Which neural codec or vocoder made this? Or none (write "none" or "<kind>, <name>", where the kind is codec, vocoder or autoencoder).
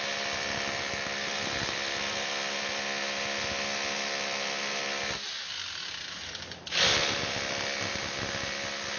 none